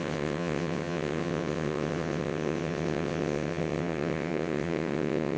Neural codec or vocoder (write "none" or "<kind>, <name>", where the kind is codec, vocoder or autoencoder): vocoder, WaveNeXt